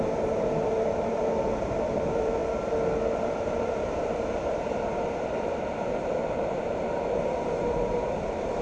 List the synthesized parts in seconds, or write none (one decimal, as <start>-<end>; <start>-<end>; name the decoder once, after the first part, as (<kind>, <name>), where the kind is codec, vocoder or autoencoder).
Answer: 0.0-2.4 (vocoder, BigVGAN v2); 3.3-8.6